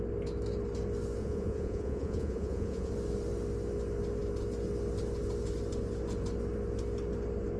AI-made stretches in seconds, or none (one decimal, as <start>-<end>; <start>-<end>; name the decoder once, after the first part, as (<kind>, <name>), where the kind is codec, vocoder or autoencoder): 1.2-2.9 (vocoder, Vocos)